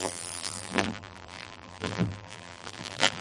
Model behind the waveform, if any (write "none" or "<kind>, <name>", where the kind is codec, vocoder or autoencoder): vocoder, BigVGAN v2